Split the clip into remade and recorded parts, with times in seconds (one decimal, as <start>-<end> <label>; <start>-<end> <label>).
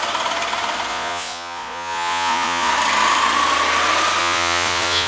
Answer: 0.0-0.9 recorded; 0.9-2.7 remade; 2.7-4.2 recorded; 4.2-5.1 remade